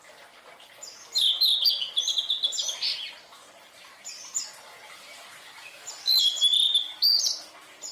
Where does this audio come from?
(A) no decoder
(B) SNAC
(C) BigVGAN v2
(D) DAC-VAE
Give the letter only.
A